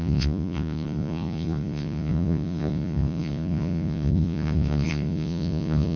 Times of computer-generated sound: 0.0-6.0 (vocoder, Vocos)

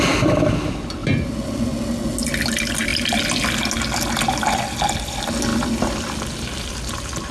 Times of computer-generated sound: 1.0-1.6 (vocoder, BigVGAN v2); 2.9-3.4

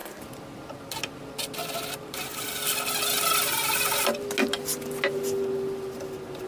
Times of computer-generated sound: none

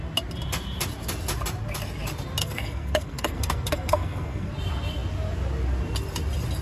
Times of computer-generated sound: 2.4-4.5 (codec, SNAC)

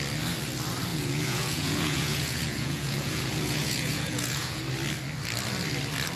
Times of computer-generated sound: 0.9-4.6 (vocoder, Vocos)

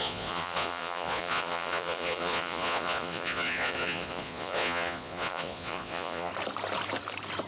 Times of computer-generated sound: 0.0-6.3 (vocoder, Vocos)

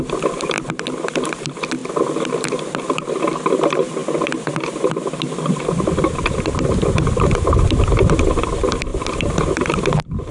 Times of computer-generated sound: none

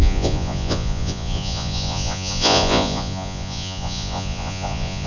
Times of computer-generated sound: 0.0-5.1 (vocoder, Vocos)